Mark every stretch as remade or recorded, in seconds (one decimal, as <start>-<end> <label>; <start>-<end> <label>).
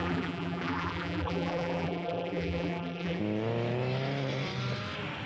0.0-3.2 remade; 3.2-5.3 recorded